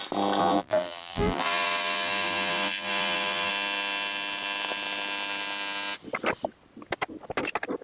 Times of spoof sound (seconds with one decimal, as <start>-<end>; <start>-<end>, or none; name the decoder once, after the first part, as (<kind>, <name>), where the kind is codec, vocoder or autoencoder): 0.4-3.5 (vocoder, BigVGAN v2)